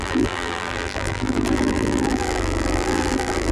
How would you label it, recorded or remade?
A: remade